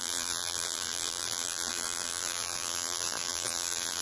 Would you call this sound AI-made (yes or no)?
yes